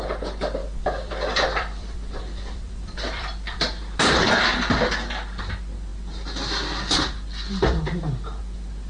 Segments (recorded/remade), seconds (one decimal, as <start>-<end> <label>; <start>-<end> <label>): 0.0-0.6 recorded; 0.6-4.4 remade; 4.4-8.9 recorded